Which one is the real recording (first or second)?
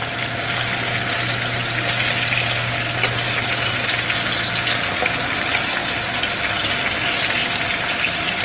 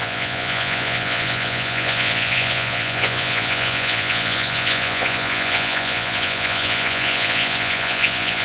first